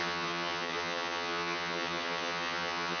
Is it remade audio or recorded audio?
remade